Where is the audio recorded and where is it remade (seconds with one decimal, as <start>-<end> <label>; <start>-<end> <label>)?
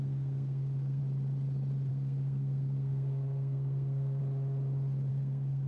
0.0-1.0 remade; 1.0-1.9 recorded; 1.9-4.2 remade; 4.2-5.1 recorded; 5.1-5.7 remade